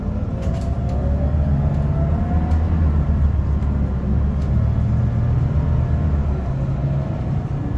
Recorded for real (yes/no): yes